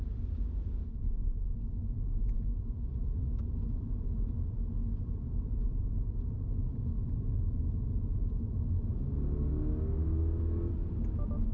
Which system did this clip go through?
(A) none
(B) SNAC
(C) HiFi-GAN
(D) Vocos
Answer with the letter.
A